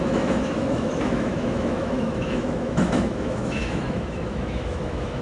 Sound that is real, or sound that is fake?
fake